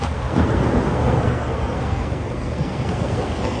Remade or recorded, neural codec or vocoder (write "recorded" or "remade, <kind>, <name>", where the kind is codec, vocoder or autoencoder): remade, codec, SNAC